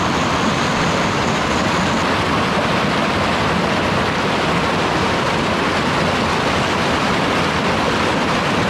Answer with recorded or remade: recorded